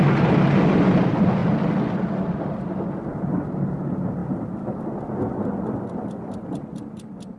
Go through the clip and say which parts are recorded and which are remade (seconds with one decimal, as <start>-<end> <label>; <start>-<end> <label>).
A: 0.0-7.4 recorded